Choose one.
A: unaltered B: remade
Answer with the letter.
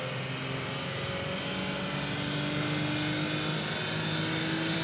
A